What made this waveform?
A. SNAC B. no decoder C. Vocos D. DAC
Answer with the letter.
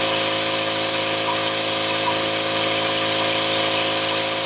B